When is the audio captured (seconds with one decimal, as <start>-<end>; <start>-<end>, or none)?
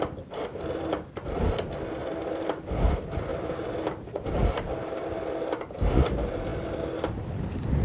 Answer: 0.0-3.3; 4.6-7.8